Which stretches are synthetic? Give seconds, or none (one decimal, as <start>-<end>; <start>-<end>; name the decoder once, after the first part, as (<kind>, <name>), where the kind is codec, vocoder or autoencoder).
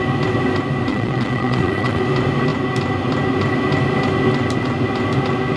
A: 0.9-2.0 (vocoder, Vocos)